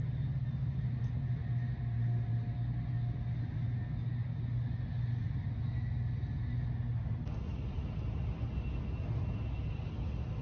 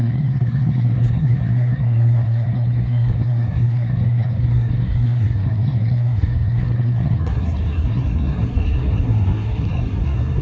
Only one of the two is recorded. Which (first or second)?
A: first